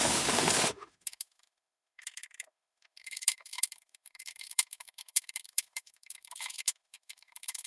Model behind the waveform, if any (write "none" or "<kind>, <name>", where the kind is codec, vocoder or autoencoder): autoencoder, DAC-VAE